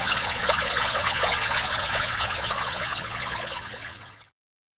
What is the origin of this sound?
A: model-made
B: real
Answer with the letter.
A